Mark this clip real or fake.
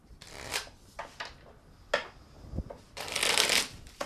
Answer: real